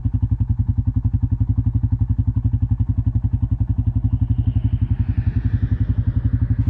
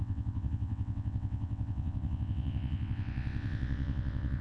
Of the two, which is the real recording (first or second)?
first